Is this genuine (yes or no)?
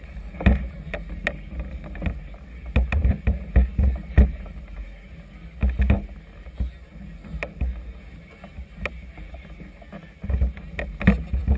yes